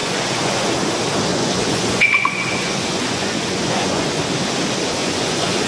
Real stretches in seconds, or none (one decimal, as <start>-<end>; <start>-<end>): 0.7-1.3; 4.2-5.0